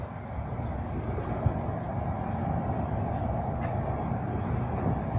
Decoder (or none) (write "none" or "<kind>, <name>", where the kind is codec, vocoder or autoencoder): none